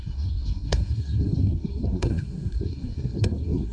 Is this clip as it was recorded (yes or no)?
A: no